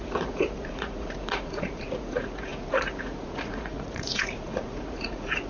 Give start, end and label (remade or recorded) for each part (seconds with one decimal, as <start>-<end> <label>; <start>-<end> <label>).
0.0-5.5 remade